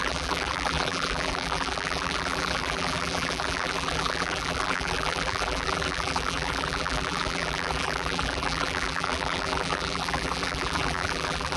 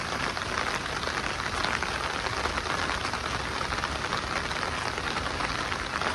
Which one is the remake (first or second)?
first